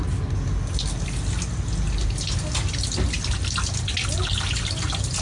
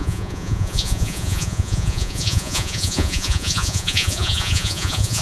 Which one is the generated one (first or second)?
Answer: second